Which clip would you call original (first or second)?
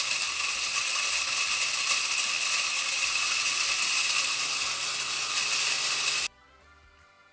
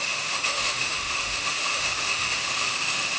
first